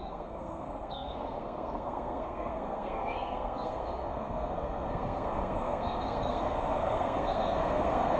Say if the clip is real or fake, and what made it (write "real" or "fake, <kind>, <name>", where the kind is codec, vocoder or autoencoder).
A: fake, codec, SNAC